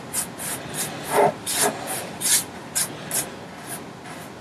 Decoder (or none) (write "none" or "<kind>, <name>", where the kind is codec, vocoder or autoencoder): none